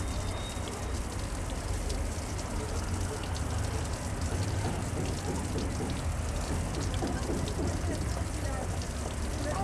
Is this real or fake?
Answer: real